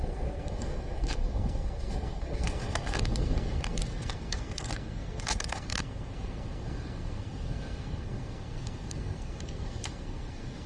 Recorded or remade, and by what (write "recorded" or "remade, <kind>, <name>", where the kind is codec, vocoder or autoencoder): remade, codec, SNAC